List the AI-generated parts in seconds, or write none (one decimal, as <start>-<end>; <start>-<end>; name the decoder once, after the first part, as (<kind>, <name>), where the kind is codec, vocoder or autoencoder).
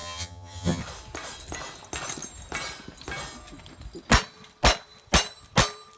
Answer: 0.0-0.8 (vocoder, HiFi-GAN)